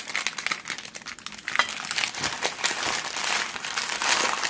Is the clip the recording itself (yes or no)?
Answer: yes